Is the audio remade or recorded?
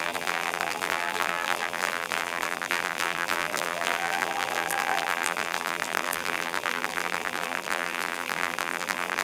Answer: remade